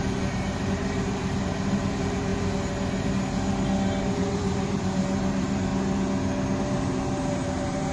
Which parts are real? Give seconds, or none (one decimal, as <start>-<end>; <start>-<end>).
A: 2.3-4.0; 5.7-6.6